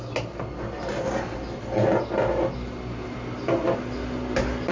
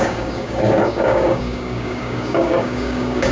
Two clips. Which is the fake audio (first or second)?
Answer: second